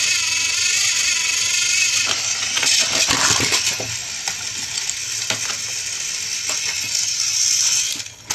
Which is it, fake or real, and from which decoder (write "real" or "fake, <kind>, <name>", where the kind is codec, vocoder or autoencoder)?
real